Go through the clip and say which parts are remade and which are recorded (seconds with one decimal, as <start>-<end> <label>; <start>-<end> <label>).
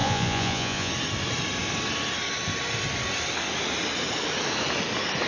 0.0-0.9 remade; 0.9-5.3 recorded